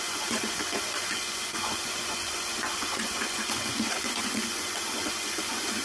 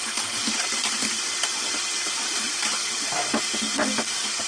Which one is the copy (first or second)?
first